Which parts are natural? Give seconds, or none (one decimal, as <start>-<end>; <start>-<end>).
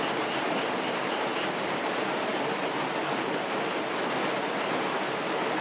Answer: 0.0-5.6